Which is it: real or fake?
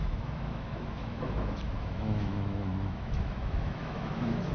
fake